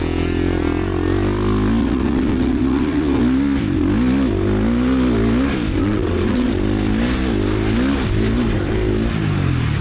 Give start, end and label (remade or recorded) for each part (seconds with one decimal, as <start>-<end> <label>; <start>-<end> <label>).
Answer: 0.0-1.8 recorded; 1.8-3.2 remade; 3.2-5.8 recorded; 5.8-6.5 remade; 6.5-9.8 recorded